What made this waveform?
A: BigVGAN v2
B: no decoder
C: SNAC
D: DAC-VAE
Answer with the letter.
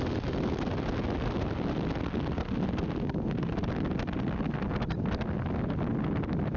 B